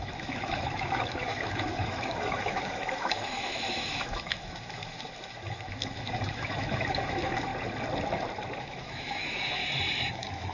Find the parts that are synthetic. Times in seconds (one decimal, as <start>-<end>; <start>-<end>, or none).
0.0-7.5; 8.6-9.6; 10.1-10.5

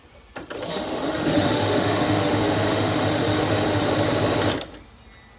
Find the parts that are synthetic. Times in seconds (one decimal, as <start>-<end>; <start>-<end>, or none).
0.7-3.9